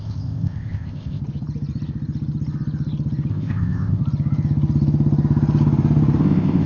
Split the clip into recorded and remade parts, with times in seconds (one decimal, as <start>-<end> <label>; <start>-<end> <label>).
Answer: 0.0-1.2 remade; 1.2-3.3 recorded; 3.3-4.0 remade; 4.0-6.2 recorded; 6.2-6.7 remade